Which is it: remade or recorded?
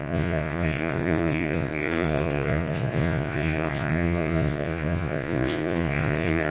remade